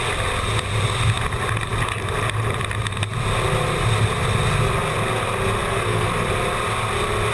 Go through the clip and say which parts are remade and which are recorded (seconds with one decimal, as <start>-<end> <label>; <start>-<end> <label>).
0.0-5.6 recorded; 5.6-6.1 remade; 6.1-7.3 recorded